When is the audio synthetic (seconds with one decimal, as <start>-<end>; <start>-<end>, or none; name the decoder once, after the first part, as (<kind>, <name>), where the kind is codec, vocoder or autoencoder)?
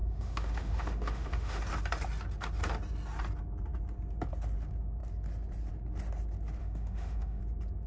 0.0-1.6 (autoencoder, DAC-VAE); 6.6-7.4